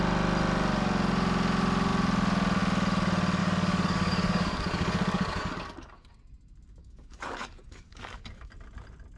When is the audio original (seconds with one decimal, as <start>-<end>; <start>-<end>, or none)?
0.0-3.4; 6.1-6.8; 8.5-9.2